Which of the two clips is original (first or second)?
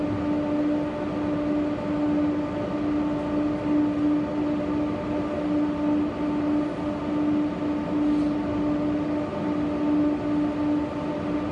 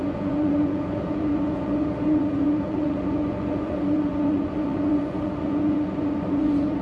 first